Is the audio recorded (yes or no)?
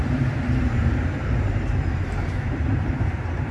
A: no